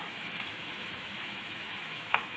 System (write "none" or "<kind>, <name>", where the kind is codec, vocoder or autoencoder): autoencoder, DAC-VAE